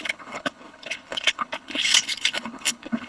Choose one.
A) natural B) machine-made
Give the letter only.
B